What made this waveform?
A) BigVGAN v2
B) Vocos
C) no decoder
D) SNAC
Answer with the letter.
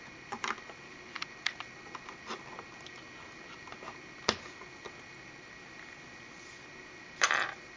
C